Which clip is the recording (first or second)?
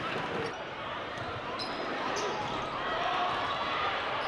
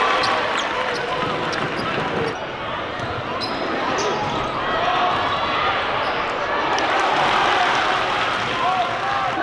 second